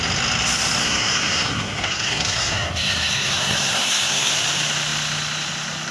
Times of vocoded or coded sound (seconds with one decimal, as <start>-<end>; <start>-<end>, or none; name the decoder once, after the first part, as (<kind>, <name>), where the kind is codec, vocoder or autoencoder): 0.8-4.3 (codec, SNAC)